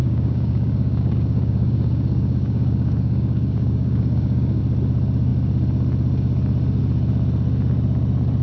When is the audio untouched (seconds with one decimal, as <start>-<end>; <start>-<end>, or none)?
4.6-8.4